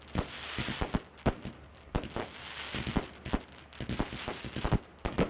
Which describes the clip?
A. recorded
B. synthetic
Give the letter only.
A